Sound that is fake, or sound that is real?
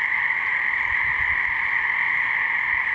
real